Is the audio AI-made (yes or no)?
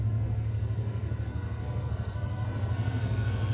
yes